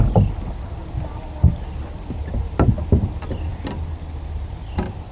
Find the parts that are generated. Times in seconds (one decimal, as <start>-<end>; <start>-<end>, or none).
none

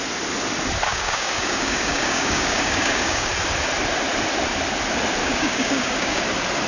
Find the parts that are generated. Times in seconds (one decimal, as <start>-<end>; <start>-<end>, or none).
0.9-3.3; 5.2-6.2

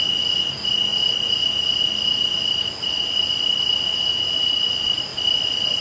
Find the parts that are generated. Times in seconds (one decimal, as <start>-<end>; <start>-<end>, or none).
5.1-5.8